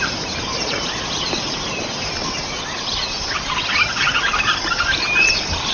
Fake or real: real